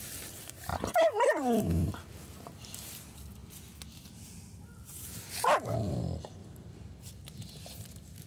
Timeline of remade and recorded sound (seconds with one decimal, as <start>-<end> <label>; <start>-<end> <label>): 0.0-3.4 remade; 3.4-5.9 recorded; 5.9-6.4 remade; 6.4-7.4 recorded; 7.4-8.3 remade

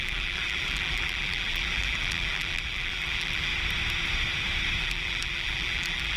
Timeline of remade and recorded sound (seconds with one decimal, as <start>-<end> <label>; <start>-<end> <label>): 0.0-3.5 remade; 3.5-4.8 recorded; 4.8-6.2 remade

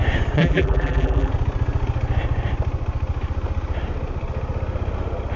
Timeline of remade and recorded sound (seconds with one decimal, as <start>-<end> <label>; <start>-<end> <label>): 0.0-0.4 recorded; 0.4-1.3 remade; 1.3-5.4 recorded

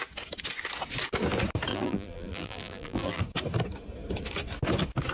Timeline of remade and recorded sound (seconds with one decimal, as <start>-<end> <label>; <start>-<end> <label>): 0.0-1.7 recorded; 1.7-3.2 remade; 3.2-5.1 recorded

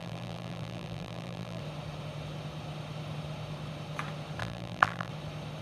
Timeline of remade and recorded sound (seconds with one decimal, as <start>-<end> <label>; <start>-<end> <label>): 0.0-1.6 remade; 1.6-4.4 recorded; 4.4-5.1 remade; 5.1-5.6 recorded

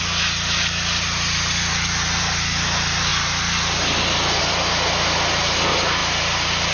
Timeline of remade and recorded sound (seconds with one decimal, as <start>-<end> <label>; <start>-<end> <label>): 0.0-6.0 recorded; 6.0-6.7 remade

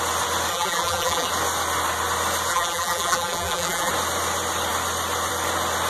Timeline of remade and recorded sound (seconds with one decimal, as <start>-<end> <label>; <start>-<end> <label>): 0.0-0.5 recorded; 0.5-1.3 remade; 1.3-2.5 recorded; 2.5-3.9 remade; 3.9-5.9 recorded

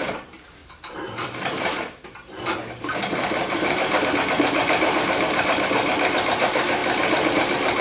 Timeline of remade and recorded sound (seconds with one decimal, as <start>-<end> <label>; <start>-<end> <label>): 0.0-6.8 remade; 6.8-7.3 recorded; 7.3-7.8 remade